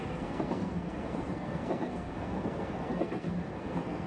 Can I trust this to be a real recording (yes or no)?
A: no